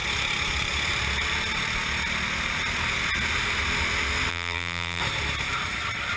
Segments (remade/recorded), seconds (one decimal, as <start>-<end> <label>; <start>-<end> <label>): 0.0-4.3 recorded; 4.3-5.0 remade; 5.0-6.2 recorded